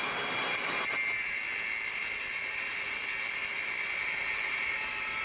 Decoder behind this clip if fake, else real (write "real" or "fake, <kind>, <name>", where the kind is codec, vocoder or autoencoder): real